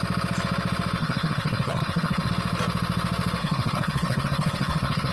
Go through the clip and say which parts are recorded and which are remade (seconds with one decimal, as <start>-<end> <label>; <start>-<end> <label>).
0.0-1.0 recorded; 1.0-2.3 remade; 2.3-3.4 recorded; 3.4-5.1 remade